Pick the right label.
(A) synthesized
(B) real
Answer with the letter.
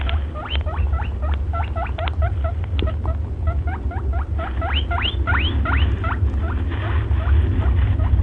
B